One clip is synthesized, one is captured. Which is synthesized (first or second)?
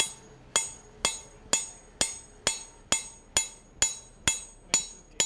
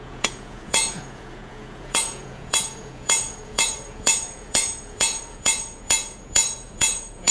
second